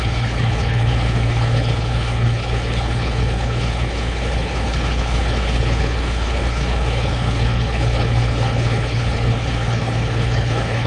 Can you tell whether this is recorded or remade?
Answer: remade